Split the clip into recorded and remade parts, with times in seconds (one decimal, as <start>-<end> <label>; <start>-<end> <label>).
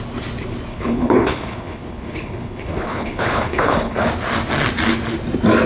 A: 0.0-0.7 recorded; 0.7-4.1 remade; 4.1-5.7 recorded